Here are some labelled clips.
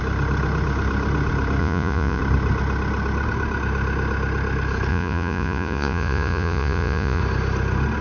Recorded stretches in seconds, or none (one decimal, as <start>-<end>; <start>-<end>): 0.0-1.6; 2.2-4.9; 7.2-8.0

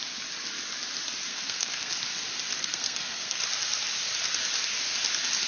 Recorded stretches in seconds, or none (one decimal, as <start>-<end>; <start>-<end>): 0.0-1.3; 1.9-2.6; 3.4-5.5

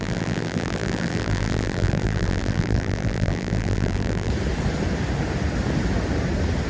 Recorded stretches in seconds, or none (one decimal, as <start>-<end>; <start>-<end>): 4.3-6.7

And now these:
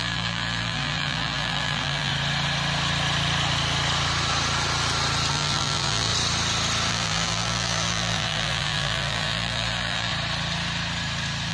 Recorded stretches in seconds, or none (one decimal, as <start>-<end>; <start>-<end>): 2.1-5.3; 6.1-6.9; 10.1-11.5